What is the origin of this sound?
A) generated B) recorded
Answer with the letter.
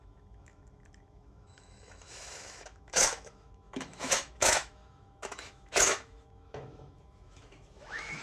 A